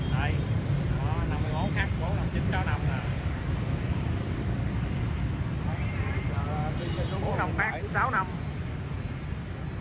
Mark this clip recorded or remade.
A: remade